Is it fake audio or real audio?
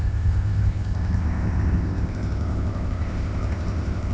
fake